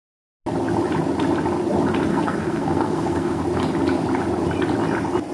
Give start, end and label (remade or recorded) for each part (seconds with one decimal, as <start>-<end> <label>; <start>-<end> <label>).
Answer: 0.0-2.1 recorded; 2.1-3.4 remade; 3.4-5.3 recorded